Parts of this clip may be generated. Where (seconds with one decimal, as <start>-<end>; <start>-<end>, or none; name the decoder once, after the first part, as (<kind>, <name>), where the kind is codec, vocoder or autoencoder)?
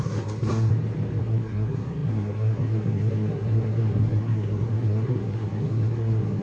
0.0-0.7 (codec, SNAC); 1.2-6.4